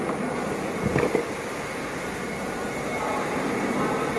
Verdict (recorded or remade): recorded